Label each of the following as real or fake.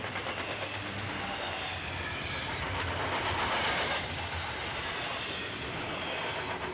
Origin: real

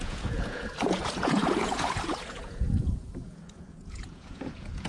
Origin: fake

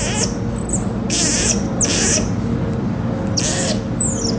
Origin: real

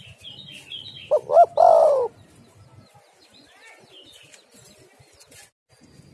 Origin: real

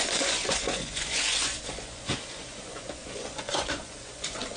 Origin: fake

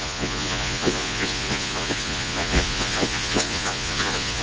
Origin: fake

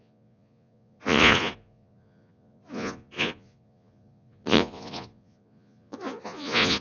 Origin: fake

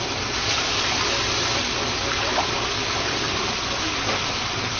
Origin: real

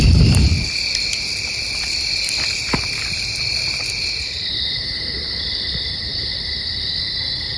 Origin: real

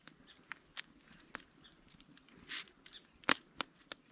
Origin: real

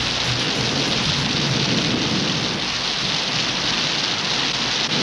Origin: real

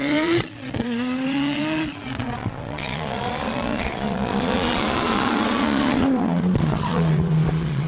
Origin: fake